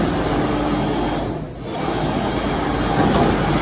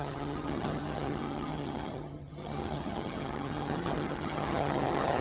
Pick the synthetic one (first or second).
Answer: second